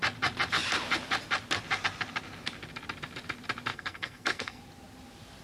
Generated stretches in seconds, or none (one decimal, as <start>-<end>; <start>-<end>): 3.7-4.6